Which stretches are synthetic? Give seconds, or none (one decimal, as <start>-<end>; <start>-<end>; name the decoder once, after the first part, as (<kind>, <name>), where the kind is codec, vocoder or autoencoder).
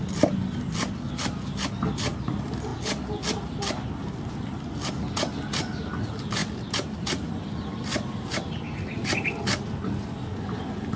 none